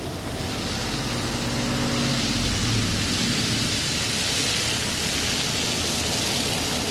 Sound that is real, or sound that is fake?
real